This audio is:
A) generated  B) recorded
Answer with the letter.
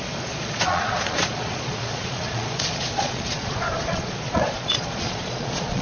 A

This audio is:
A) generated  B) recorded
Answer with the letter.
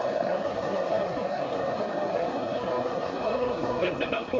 A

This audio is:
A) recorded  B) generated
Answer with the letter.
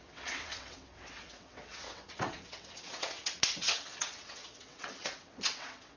B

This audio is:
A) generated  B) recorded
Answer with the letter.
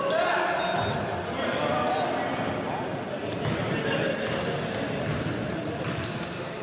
B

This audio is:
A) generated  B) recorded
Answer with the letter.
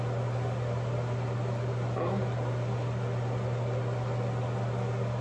B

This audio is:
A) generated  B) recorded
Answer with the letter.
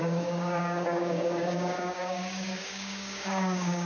A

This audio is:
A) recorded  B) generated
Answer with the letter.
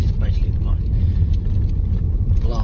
B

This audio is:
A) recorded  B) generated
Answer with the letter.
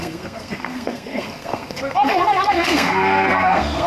B